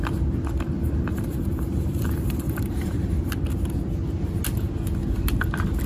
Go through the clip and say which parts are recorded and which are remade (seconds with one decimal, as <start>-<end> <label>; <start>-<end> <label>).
0.0-1.1 recorded; 1.1-3.3 remade; 3.3-5.9 recorded